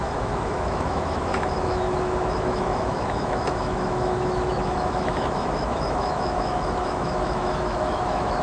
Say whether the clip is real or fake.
fake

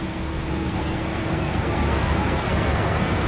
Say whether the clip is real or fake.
fake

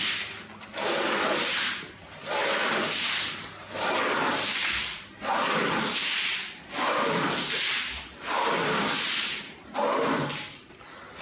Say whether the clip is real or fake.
real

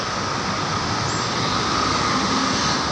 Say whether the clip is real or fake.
real